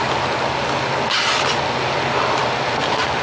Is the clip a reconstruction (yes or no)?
no